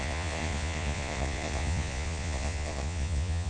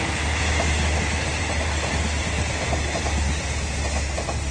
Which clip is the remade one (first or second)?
first